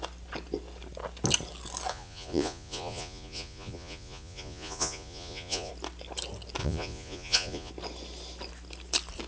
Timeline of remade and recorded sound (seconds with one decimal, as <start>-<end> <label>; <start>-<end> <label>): 0.0-1.9 recorded; 1.9-5.7 remade; 5.7-6.6 recorded; 6.6-7.7 remade; 7.7-9.3 recorded